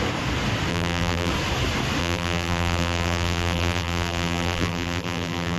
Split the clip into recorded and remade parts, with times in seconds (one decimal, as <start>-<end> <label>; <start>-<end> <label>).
0.0-0.7 recorded; 0.7-1.3 remade; 1.3-2.0 recorded; 2.0-5.6 remade